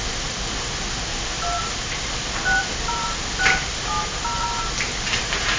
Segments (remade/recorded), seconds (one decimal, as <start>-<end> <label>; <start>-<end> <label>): 0.0-1.1 recorded; 1.1-3.9 remade; 3.9-5.6 recorded